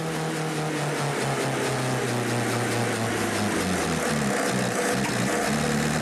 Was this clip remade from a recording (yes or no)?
no